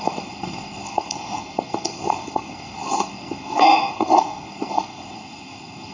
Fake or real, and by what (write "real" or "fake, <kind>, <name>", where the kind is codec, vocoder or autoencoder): fake, codec, SNAC